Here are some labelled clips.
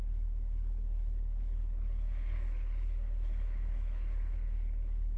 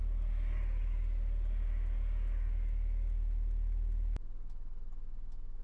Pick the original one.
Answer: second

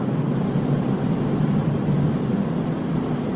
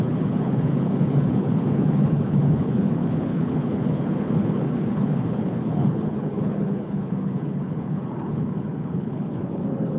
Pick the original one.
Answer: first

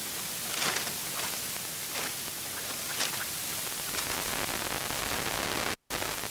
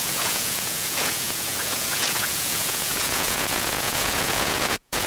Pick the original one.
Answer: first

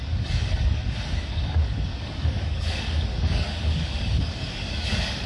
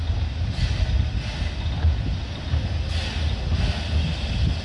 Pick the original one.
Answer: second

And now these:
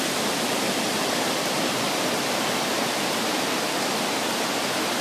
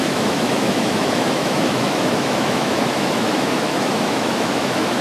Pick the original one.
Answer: first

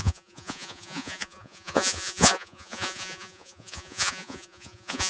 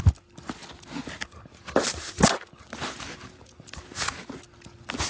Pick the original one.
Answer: second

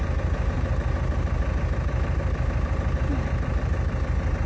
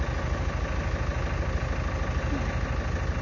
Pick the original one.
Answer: second